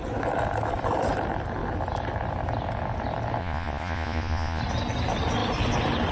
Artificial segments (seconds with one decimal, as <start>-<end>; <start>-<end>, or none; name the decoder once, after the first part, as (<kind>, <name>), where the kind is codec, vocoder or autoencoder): 3.4-4.6 (vocoder, Vocos)